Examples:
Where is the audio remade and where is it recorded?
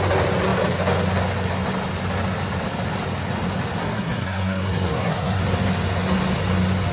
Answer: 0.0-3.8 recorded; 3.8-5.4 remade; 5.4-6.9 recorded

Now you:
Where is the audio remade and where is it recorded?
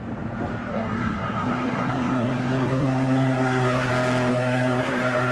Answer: 0.0-0.7 recorded; 0.7-3.9 remade; 3.9-4.3 recorded; 4.3-5.3 remade